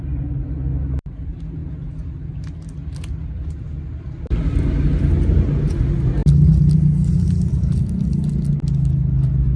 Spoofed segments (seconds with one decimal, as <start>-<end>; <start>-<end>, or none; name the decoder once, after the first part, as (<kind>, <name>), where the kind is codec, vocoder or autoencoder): none